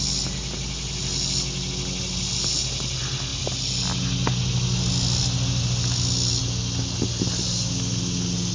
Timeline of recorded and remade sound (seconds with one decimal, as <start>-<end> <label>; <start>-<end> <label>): 0.0-8.5 recorded

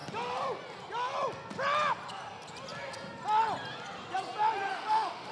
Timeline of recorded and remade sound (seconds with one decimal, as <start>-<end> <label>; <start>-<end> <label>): 0.0-4.7 recorded; 4.7-5.3 remade

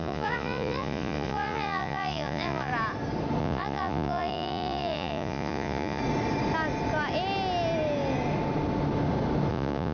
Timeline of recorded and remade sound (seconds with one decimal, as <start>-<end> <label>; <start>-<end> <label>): 0.0-2.7 remade; 2.7-3.4 recorded; 3.4-6.0 remade; 6.0-9.5 recorded; 9.5-9.9 remade

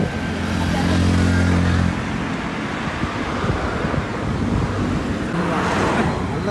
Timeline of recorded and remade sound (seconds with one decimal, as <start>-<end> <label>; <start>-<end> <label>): 0.0-6.5 recorded

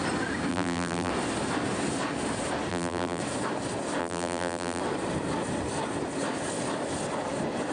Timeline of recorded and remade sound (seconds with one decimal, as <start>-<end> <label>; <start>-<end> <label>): 0.0-0.5 recorded; 0.5-1.1 remade; 1.1-2.7 recorded; 2.7-3.2 remade; 3.2-4.0 recorded; 4.0-4.8 remade; 4.8-7.7 recorded

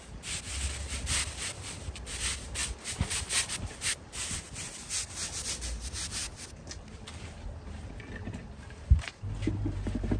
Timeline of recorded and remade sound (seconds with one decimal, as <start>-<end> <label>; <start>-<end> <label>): 0.0-10.2 recorded